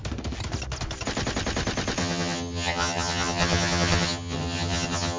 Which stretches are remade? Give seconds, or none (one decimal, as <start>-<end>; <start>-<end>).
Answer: 2.0-5.2